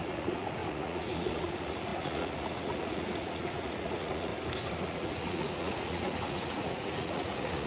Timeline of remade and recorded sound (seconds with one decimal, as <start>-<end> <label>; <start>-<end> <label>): 0.0-4.3 remade; 4.3-4.8 recorded; 4.8-7.7 remade